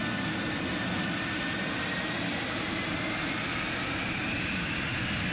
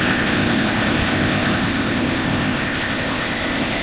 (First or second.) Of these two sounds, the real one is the first